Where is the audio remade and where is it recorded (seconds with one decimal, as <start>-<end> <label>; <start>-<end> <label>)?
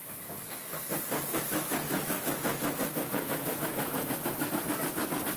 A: 0.0-0.9 remade; 0.9-1.3 recorded; 1.3-4.5 remade; 4.5-5.4 recorded